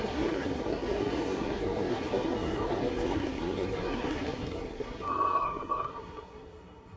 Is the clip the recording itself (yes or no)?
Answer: no